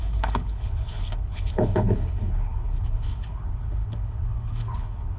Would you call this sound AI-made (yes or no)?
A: yes